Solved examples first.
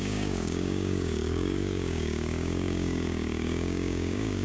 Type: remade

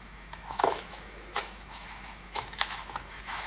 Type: remade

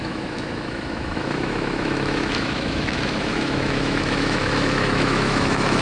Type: remade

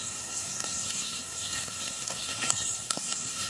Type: remade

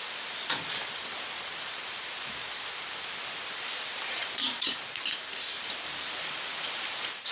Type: remade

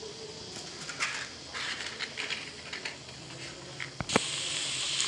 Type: recorded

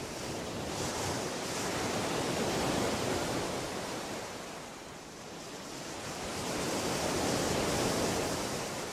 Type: recorded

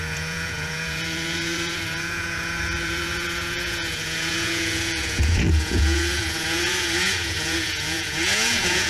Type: remade